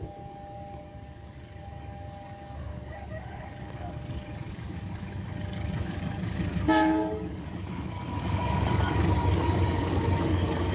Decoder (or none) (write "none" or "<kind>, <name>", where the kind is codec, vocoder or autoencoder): codec, DAC